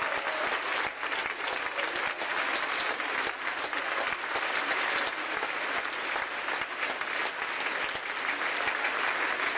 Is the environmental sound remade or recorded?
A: recorded